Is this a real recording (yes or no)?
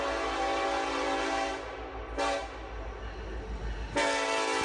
yes